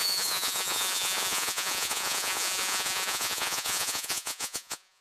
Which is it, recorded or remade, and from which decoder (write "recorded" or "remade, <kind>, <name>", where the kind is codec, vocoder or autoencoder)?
remade, vocoder, Vocos